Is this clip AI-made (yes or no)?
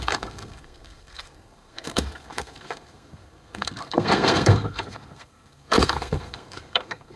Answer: yes